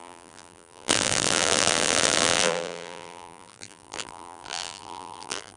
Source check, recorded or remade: remade